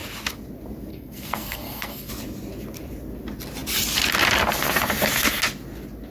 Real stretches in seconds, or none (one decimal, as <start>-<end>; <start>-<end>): 0.0-0.9; 2.1-6.1